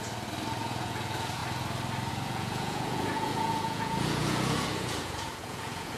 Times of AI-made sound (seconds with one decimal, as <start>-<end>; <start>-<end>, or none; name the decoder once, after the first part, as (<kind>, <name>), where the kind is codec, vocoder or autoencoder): 0.6-1.4 (vocoder, Vocos); 2.1-6.0